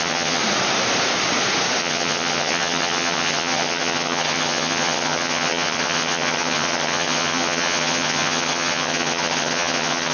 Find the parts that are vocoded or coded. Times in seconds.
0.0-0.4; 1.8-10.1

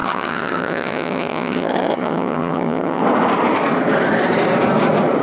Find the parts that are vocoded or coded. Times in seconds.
0.0-3.0